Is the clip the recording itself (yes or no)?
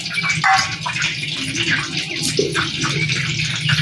yes